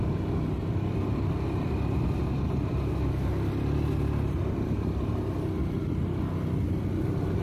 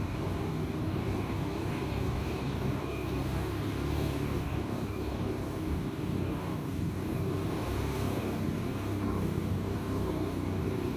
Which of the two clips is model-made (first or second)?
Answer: second